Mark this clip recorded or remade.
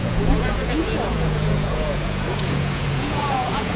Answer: remade